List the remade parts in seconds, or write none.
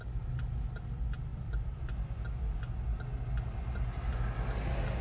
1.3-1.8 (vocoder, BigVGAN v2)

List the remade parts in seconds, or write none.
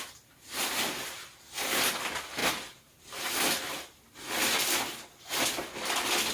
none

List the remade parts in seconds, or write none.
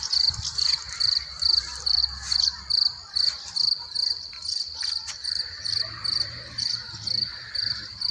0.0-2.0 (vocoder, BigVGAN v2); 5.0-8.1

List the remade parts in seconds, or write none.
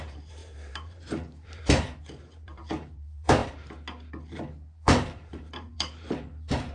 0.0-3.4 (vocoder, BigVGAN v2); 4.3-6.7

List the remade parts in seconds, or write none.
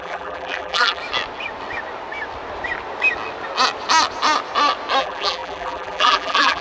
0.0-1.0 (vocoder, BigVGAN v2); 5.0-6.6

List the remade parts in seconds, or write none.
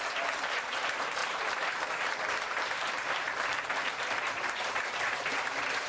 0.0-5.9 (vocoder, BigVGAN v2)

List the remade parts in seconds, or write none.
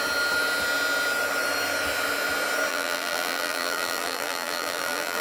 2.7-5.2 (vocoder, BigVGAN v2)